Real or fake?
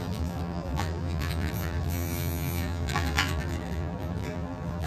fake